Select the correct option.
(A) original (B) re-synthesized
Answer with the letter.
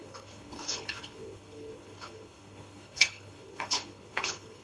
B